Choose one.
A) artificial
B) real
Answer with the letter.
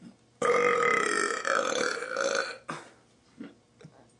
B